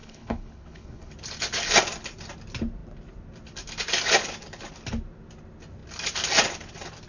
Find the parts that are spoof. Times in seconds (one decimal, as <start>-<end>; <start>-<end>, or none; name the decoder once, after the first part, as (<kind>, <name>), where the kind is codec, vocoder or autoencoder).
0.0-1.1 (codec, HILCodec)